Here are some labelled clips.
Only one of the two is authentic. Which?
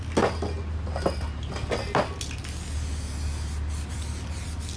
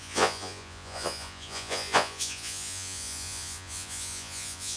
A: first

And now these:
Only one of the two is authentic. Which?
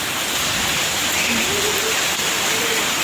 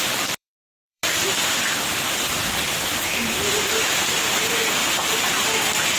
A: first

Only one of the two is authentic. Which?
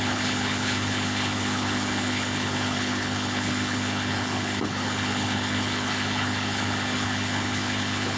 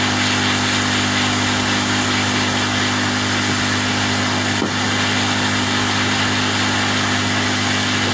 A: second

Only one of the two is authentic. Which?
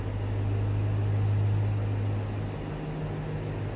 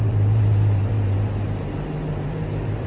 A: first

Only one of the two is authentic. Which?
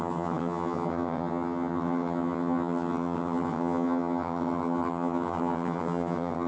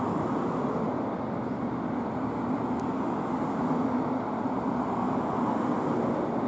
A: second